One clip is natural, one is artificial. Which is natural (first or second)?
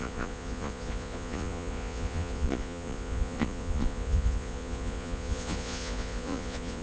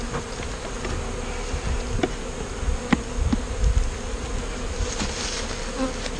second